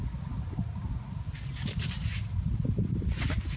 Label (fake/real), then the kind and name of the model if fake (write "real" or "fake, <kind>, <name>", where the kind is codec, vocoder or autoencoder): real